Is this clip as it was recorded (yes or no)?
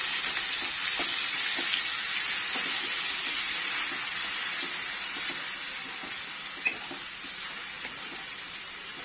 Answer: yes